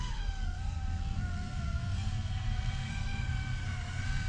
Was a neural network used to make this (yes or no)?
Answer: yes